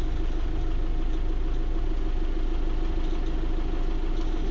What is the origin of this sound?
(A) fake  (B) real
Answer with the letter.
B